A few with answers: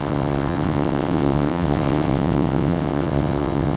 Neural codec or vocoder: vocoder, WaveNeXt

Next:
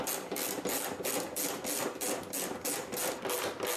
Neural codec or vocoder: none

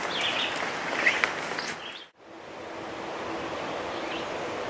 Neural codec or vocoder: none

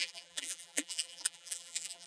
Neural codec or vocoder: vocoder, BigVGAN v2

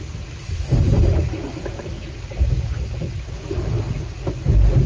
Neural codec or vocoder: none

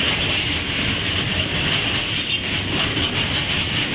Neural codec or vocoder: none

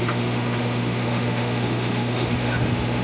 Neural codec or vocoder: autoencoder, DAC-VAE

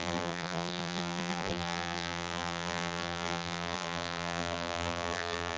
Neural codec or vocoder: vocoder, BigVGAN v2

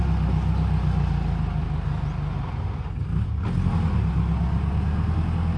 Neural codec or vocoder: none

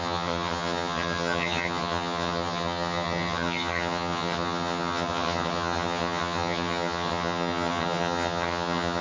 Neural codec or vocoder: vocoder, HiFi-GAN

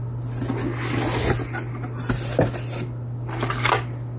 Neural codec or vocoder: none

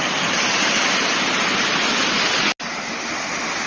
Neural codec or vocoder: none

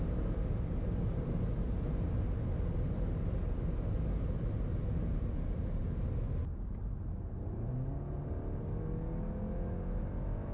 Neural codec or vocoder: none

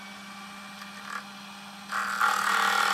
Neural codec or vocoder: none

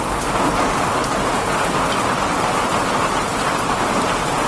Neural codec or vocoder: none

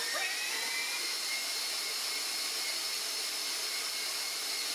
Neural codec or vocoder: vocoder, BigVGAN v2